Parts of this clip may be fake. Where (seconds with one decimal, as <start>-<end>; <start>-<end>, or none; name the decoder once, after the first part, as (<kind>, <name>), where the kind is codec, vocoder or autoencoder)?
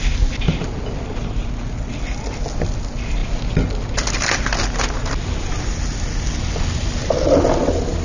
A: none